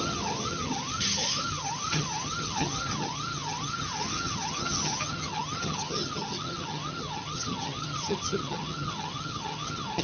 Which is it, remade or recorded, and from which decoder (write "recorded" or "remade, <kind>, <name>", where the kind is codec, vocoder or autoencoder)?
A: remade, vocoder, HiFi-GAN